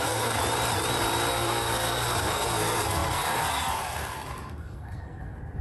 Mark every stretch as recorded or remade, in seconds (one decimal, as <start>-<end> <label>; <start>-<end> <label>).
0.0-0.4 remade; 0.4-1.3 recorded; 1.3-5.6 remade